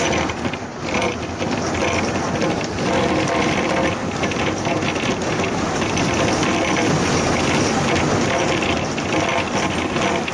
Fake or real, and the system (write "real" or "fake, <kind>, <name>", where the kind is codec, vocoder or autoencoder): real